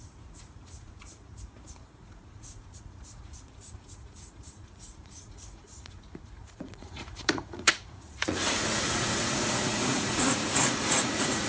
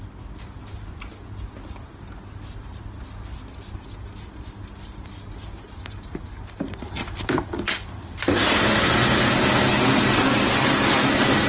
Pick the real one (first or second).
second